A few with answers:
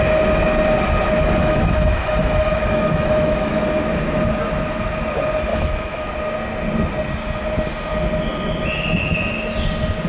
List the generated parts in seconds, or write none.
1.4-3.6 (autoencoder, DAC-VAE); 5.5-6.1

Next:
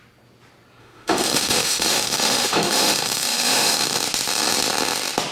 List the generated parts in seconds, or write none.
0.8-4.0 (autoencoder, DAC-VAE)

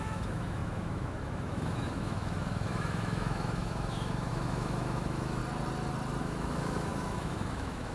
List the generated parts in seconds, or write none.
0.0-5.4 (autoencoder, DAC-VAE); 6.2-7.9

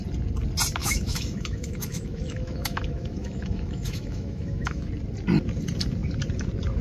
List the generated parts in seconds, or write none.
0.8-4.9 (autoencoder, DAC-VAE)

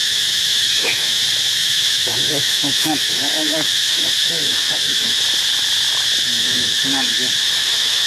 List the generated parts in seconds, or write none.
0.0-1.2 (autoencoder, DAC-VAE); 1.6-5.2; 6.4-7.1; 7.6-8.1

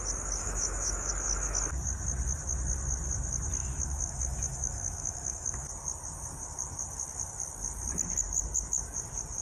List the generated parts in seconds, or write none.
0.4-1.1 (autoencoder, DAC-VAE); 3.6-5.7